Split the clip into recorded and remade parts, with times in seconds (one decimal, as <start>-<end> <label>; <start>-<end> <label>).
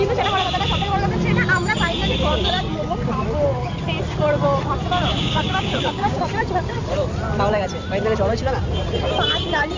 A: 0.0-5.1 recorded; 5.1-6.2 remade; 6.2-9.8 recorded